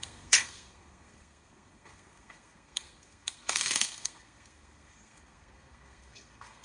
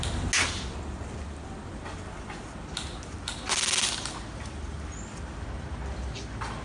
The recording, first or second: second